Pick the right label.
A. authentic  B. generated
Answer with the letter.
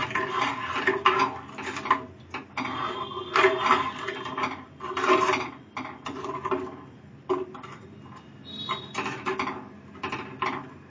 A